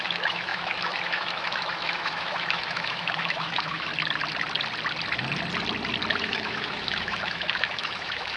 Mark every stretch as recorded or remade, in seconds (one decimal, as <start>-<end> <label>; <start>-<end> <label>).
0.0-3.9 remade; 3.9-6.2 recorded; 6.2-8.4 remade